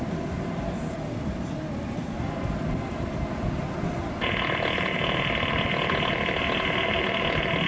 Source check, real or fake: real